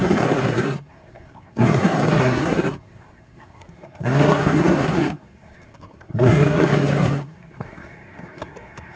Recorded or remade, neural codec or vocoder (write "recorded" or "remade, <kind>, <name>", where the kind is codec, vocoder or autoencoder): remade, codec, SNAC